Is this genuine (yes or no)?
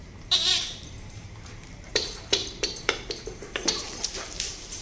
no